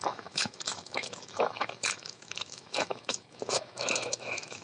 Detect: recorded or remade remade